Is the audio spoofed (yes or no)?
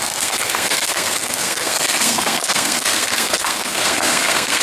yes